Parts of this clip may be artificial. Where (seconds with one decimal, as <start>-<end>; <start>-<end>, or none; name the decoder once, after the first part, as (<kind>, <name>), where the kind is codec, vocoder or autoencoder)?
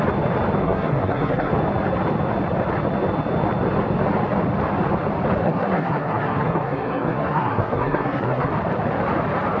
0.6-1.5 (codec, SNAC); 5.4-8.5